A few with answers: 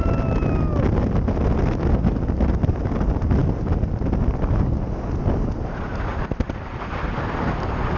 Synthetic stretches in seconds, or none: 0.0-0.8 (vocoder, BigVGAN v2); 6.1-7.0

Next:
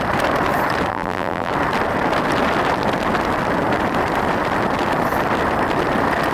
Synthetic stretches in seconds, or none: 0.9-1.5 (vocoder, BigVGAN v2)

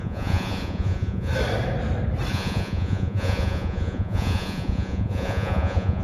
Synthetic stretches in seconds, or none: 0.0-1.3 (vocoder, Vocos); 2.3-6.0